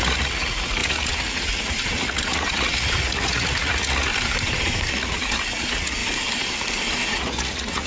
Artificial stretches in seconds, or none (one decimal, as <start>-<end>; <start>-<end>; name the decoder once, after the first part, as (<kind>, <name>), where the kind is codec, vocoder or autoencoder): 0.0-4.1 (vocoder, Vocos); 4.9-6.0; 7.1-7.9